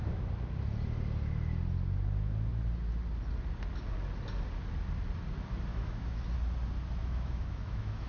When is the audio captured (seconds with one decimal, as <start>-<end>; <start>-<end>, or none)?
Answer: 0.0-5.7; 6.2-7.0